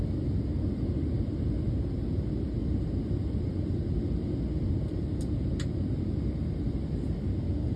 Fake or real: real